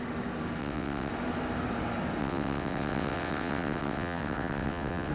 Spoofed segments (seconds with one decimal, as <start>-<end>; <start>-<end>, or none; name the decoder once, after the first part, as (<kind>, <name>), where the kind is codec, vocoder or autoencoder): 0.6-1.1 (vocoder, WaveNeXt); 2.2-5.1